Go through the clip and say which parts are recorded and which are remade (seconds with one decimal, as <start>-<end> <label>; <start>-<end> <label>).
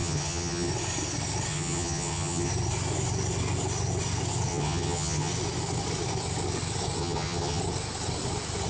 0.0-0.7 remade; 0.7-1.5 recorded; 1.5-2.5 remade; 2.5-4.5 recorded; 4.5-5.3 remade; 5.3-7.0 recorded; 7.0-7.6 remade; 7.6-8.7 recorded